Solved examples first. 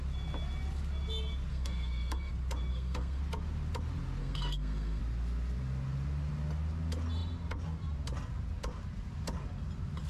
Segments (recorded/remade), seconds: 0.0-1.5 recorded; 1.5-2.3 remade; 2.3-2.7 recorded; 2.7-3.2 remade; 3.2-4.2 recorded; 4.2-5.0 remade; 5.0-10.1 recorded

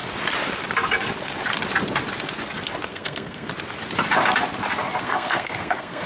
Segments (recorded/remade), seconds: 0.0-2.9 recorded; 2.9-3.5 remade; 3.5-5.0 recorded; 5.0-6.1 remade

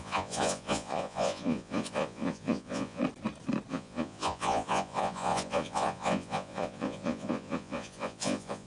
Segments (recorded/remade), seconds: 0.0-3.0 remade; 3.0-3.7 recorded; 3.7-8.7 remade

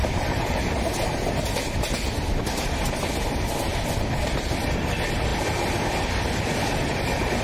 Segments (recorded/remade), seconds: 0.0-0.6 remade; 0.6-7.4 recorded